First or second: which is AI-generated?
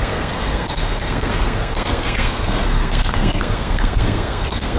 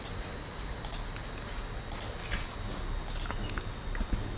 first